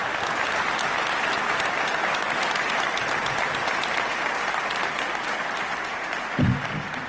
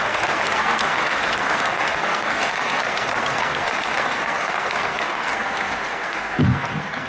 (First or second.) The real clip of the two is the first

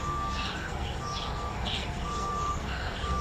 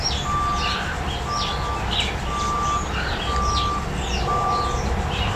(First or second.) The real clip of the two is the second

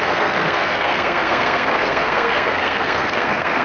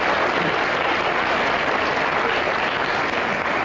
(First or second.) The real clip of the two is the second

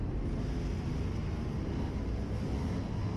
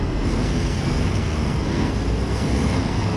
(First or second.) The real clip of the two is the first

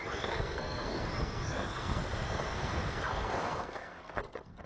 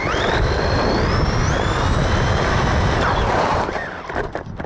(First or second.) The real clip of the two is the second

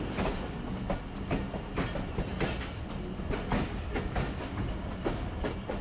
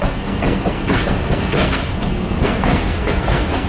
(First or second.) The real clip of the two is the first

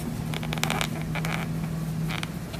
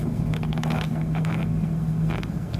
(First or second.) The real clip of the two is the first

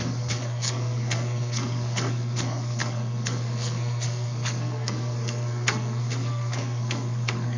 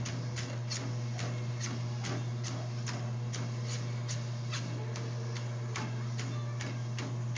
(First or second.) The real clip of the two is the second